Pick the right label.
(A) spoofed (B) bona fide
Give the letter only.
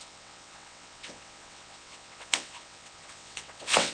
A